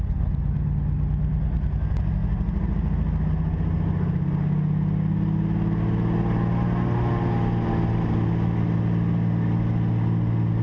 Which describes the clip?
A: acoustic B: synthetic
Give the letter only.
A